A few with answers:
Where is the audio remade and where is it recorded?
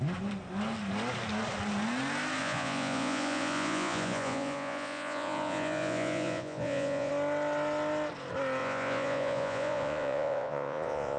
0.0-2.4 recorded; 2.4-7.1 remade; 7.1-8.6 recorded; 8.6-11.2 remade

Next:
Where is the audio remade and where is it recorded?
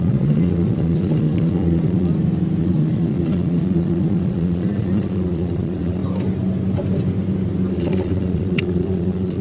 0.0-2.1 remade; 2.1-2.6 recorded; 2.6-6.0 remade; 6.0-7.7 recorded; 7.7-9.4 remade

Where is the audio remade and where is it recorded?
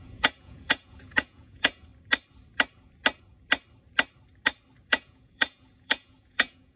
0.0-1.9 remade; 1.9-4.9 recorded; 4.9-6.8 remade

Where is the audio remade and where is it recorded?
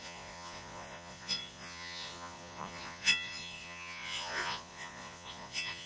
0.0-5.9 remade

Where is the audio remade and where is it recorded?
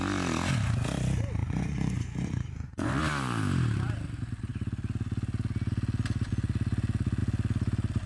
0.0-1.4 recorded; 1.4-3.0 remade; 3.0-8.1 recorded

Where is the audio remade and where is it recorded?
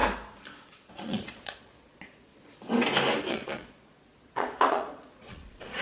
0.0-0.9 recorded; 0.9-2.3 remade; 2.3-3.3 recorded; 3.3-5.8 remade